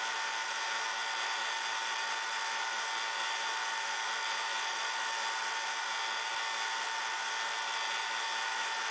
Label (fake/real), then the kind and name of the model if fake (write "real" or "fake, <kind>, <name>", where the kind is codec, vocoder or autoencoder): real